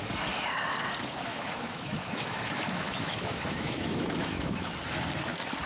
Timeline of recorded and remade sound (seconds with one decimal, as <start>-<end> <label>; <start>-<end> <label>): 0.0-1.3 recorded; 1.3-4.7 remade; 4.7-5.7 recorded